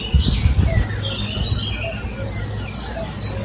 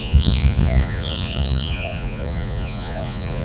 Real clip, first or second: first